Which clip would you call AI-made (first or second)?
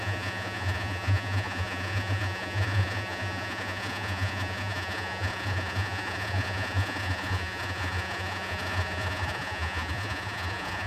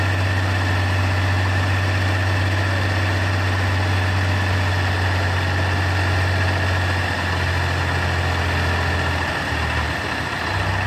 first